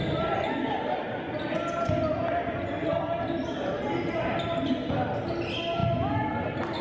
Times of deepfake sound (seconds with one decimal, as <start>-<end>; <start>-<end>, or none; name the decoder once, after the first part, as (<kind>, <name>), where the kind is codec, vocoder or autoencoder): none